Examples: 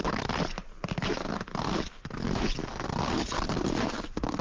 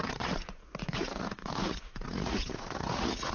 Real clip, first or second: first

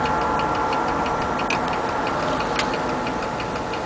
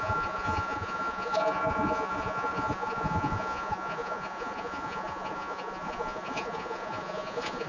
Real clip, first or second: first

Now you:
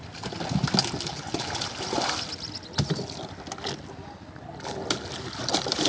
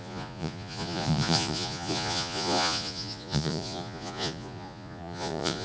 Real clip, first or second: first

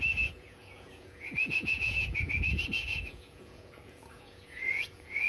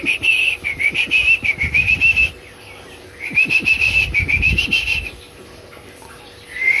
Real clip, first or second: second